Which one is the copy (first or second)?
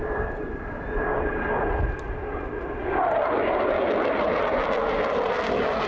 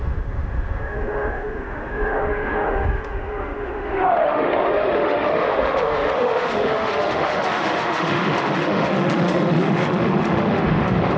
second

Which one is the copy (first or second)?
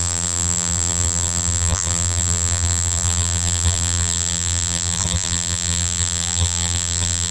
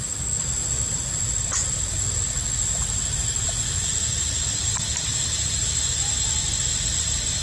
first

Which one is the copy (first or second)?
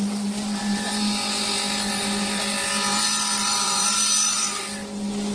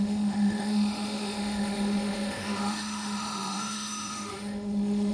second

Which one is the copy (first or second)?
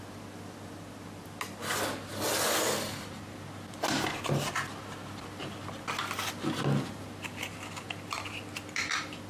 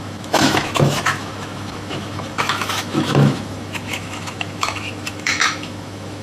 second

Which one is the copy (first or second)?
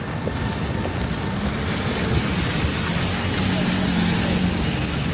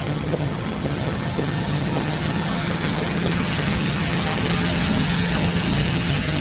second